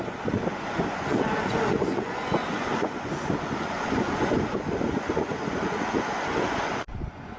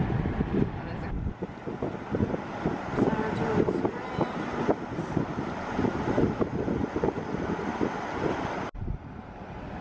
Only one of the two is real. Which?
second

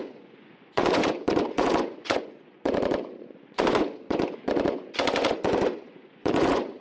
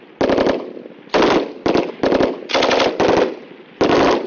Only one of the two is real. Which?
second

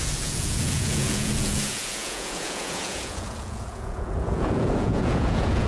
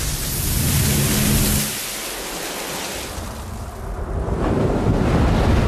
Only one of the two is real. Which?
second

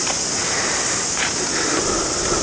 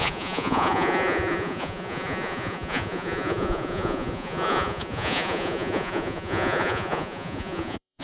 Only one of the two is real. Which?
first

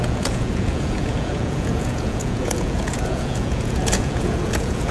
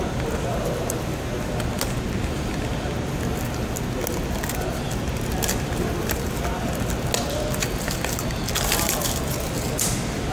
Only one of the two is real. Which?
second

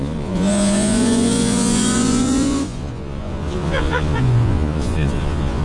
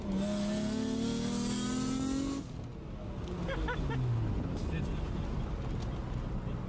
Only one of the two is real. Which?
second